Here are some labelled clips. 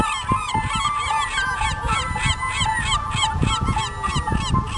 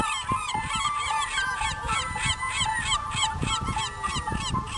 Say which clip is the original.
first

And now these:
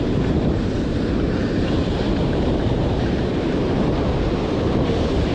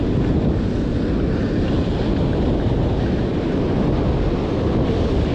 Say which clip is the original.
second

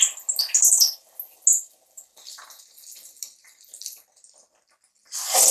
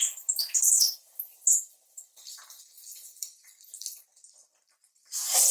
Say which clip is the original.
first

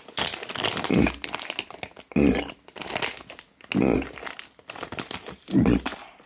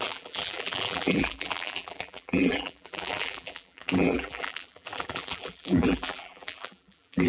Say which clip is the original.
first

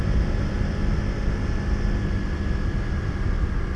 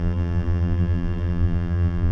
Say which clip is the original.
first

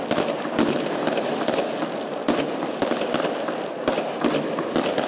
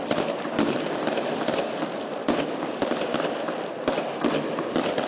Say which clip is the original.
first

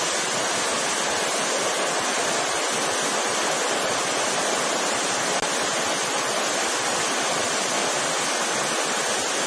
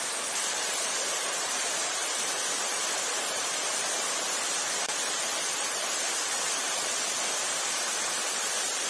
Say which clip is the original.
first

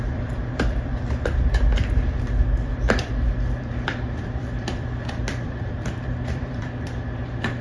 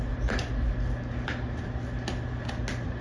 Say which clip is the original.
second